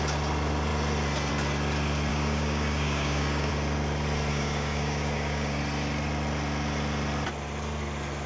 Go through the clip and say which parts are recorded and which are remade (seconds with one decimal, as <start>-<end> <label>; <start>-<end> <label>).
0.0-2.1 recorded; 2.1-3.5 remade; 3.5-4.3 recorded; 4.3-5.6 remade; 5.6-8.3 recorded